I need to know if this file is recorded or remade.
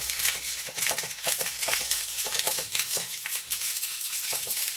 remade